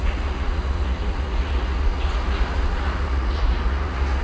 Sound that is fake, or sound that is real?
fake